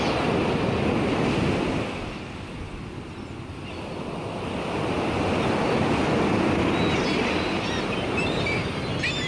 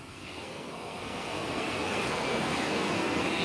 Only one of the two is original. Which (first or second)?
first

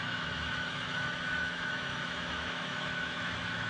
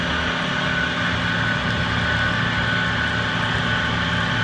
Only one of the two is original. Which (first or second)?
second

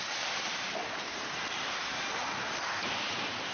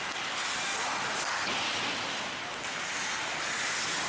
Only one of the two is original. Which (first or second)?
second